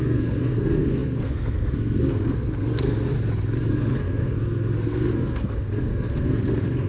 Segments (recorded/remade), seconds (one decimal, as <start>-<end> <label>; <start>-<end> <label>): 0.0-3.1 remade; 3.1-3.7 recorded; 3.7-6.9 remade